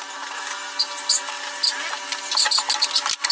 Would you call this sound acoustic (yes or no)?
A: yes